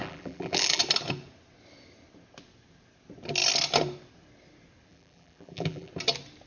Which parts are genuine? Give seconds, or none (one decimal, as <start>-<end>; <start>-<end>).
0.8-4.9; 5.9-6.5